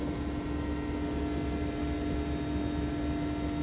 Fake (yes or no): no